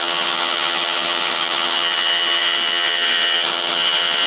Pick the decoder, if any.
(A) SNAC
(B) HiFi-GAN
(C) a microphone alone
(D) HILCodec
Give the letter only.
B